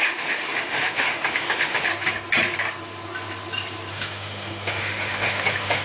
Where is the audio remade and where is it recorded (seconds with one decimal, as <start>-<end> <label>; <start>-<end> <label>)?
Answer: 0.0-1.9 remade; 1.9-3.9 recorded; 3.9-5.8 remade